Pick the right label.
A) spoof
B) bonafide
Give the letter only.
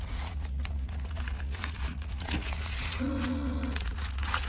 A